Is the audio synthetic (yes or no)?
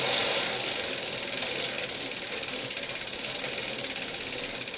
no